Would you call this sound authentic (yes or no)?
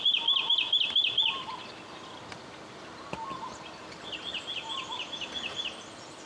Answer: yes